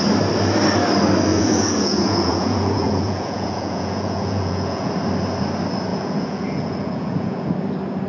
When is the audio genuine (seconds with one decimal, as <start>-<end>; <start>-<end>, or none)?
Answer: 0.0-1.3; 4.9-5.9; 7.5-8.1